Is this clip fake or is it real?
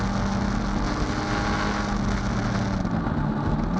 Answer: real